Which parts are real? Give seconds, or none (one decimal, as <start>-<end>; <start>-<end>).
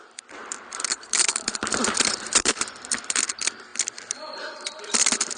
3.7-4.8